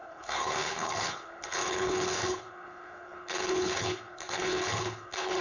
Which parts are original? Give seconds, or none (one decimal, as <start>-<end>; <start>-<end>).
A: none